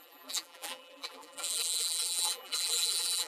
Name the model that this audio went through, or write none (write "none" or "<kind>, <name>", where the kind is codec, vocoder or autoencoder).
vocoder, BigVGAN v2